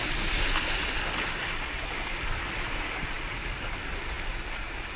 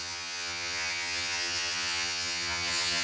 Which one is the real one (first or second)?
first